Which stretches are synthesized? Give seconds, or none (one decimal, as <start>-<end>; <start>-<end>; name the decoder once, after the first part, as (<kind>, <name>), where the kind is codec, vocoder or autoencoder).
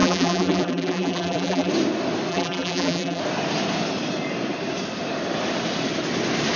0.0-1.7 (vocoder, BigVGAN v2); 2.3-3.2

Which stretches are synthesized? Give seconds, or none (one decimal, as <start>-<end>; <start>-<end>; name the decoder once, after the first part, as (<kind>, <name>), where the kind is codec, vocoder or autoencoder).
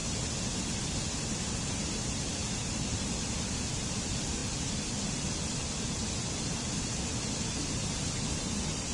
none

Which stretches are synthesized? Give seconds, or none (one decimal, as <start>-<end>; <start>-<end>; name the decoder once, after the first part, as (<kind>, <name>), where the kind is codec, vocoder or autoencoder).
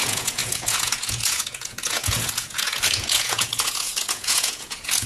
0.0-5.1 (vocoder, Vocos)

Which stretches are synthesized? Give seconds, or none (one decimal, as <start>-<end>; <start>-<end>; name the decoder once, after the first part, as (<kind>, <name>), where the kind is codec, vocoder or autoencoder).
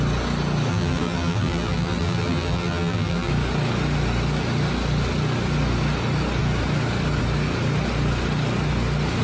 0.7-3.3 (vocoder, BigVGAN v2)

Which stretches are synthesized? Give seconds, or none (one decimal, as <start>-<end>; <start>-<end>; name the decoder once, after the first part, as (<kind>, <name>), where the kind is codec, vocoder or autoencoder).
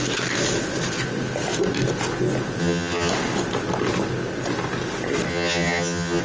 2.6-3.1 (vocoder, HiFi-GAN); 5.3-6.2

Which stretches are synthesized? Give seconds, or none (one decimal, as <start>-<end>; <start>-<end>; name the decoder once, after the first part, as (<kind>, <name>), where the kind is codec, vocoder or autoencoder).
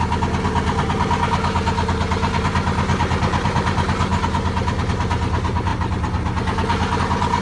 none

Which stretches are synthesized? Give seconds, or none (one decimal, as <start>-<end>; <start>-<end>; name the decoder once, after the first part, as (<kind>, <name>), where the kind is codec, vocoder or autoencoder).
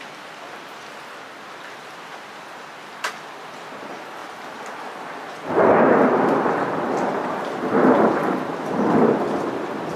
4.2-9.4 (vocoder, BigVGAN v2)